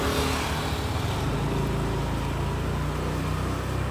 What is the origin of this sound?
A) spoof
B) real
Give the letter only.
B